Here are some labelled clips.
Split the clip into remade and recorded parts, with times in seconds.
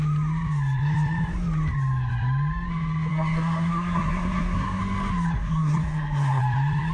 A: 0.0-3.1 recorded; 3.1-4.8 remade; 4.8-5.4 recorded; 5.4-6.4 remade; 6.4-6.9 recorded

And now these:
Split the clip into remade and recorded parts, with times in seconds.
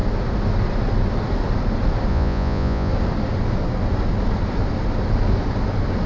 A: 0.0-2.1 recorded; 2.1-2.9 remade; 2.9-6.1 recorded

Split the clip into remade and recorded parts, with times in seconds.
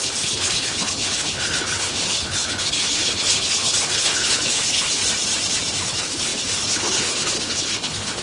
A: 0.0-5.0 remade; 5.0-5.8 recorded; 5.8-8.2 remade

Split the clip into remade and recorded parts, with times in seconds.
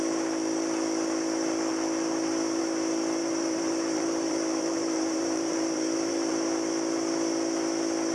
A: 0.0-3.2 recorded; 3.2-6.3 remade; 6.3-8.1 recorded